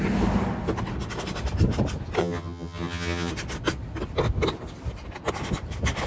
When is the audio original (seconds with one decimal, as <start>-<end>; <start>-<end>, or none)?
0.0-2.2; 3.3-6.1